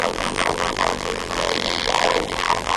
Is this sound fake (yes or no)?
yes